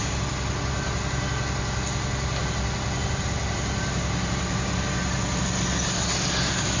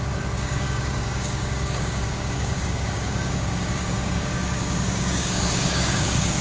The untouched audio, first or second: first